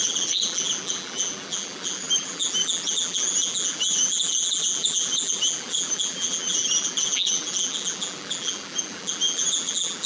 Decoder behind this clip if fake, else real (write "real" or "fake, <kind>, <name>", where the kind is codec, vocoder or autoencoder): fake, vocoder, BigVGAN v2